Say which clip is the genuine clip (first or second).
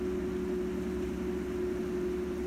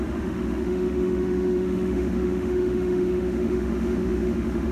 first